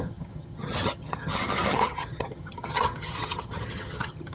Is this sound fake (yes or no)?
yes